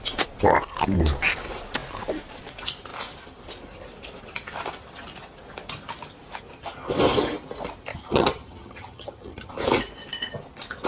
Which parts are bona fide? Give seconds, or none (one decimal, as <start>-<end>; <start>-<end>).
0.0-7.9; 9.5-10.9